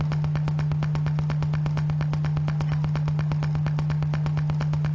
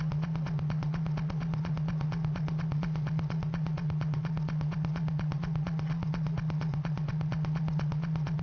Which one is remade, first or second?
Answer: second